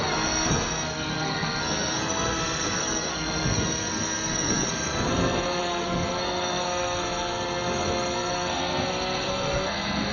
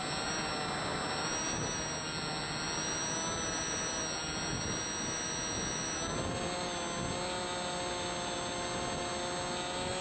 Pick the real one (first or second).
second